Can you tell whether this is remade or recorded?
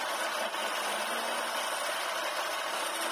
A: recorded